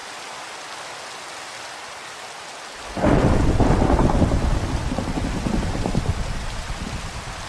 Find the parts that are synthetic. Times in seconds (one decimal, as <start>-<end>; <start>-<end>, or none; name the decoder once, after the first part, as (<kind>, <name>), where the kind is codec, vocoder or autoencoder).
none